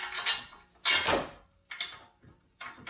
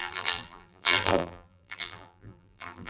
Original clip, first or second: first